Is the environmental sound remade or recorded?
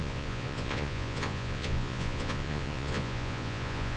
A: remade